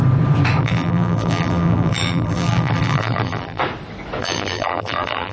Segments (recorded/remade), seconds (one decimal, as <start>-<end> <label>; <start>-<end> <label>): 0.0-0.6 recorded; 0.6-3.6 remade; 3.6-4.2 recorded; 4.2-5.3 remade